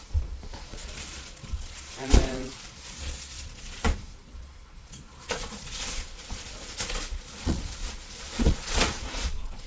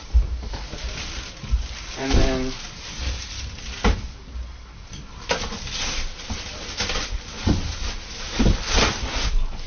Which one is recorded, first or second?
second